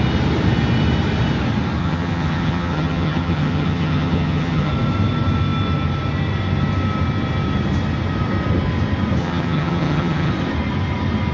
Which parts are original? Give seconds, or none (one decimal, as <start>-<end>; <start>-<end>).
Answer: 0.0-1.8; 4.7-9.2; 10.3-11.3